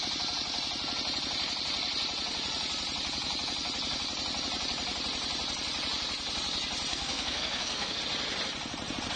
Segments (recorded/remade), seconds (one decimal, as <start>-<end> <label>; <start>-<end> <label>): 0.0-6.9 recorded; 6.9-8.0 remade; 8.0-9.2 recorded